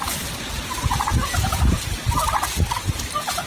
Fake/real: real